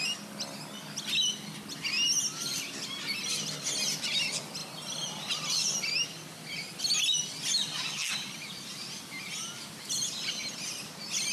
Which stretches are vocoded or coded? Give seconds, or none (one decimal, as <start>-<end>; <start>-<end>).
none